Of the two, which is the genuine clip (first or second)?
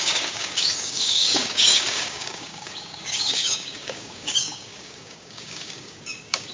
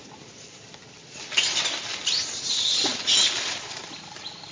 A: second